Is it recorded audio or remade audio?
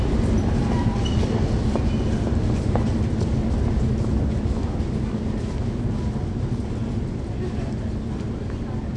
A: recorded